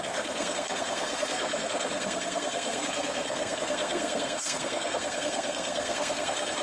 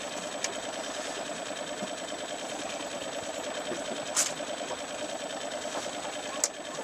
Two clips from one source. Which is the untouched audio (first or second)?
second